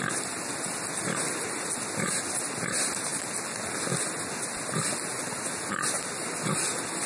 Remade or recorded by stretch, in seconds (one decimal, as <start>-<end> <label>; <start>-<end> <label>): 0.0-7.1 recorded